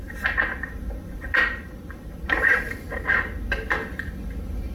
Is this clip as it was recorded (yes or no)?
yes